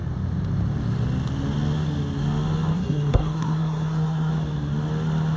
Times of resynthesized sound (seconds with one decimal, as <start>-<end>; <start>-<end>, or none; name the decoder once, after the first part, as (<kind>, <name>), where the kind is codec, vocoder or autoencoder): 2.7-4.3 (codec, SNAC)